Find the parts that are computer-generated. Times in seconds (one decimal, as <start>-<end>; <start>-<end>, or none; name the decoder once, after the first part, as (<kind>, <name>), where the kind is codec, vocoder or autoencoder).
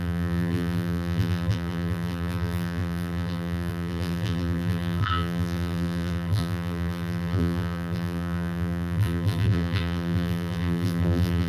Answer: 0.0-11.5 (vocoder, BigVGAN v2)